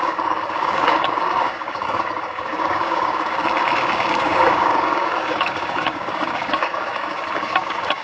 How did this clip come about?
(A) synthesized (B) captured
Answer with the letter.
A